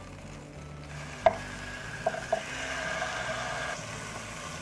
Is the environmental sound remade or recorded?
recorded